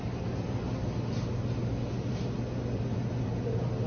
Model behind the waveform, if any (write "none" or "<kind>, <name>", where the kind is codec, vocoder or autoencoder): none